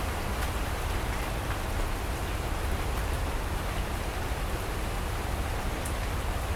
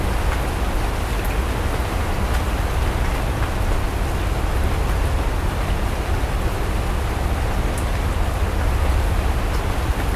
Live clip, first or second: second